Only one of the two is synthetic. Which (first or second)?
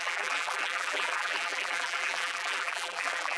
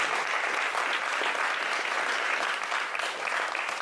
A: first